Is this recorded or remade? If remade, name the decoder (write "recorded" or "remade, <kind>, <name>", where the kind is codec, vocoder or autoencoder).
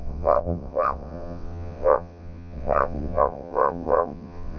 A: remade, vocoder, WaveNeXt